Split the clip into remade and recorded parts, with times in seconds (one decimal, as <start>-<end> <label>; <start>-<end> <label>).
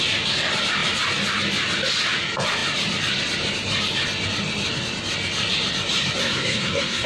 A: 0.0-6.2 recorded; 6.2-7.1 remade